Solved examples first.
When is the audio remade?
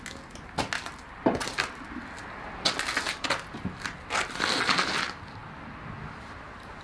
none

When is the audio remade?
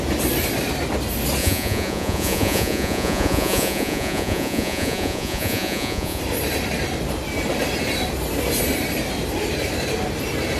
1.4-6.2